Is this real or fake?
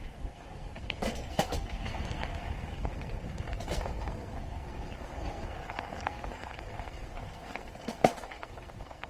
fake